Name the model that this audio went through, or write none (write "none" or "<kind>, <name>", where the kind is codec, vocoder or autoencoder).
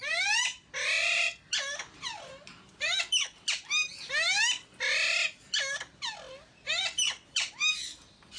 none